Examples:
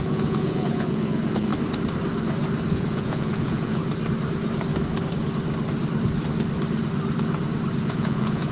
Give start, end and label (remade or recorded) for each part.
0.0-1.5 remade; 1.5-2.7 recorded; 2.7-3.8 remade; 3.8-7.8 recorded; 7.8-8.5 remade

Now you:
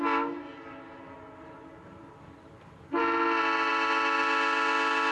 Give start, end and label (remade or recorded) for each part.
0.0-5.1 recorded

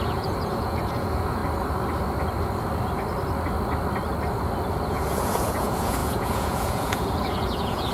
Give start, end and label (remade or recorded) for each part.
0.0-1.4 remade; 1.4-4.9 recorded; 4.9-7.9 remade

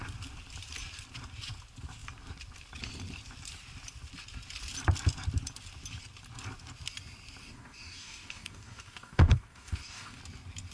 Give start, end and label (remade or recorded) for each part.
0.0-7.4 recorded; 7.4-10.2 remade; 10.2-10.7 recorded

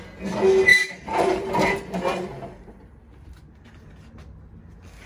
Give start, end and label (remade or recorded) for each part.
0.0-0.7 recorded; 0.7-1.5 remade; 1.5-5.1 recorded